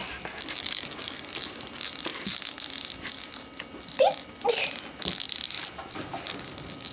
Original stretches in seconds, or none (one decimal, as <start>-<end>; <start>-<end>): 0.0-6.9